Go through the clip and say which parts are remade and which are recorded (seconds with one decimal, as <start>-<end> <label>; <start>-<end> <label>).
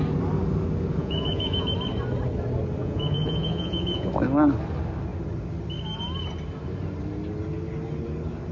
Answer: 0.0-1.0 recorded; 1.0-1.7 remade; 1.7-2.8 recorded; 2.8-4.1 remade; 4.1-8.5 recorded